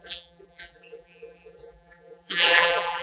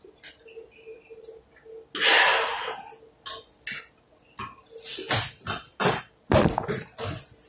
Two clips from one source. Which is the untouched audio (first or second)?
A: second